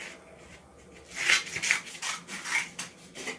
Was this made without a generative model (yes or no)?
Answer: yes